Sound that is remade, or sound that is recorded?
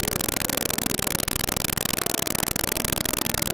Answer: recorded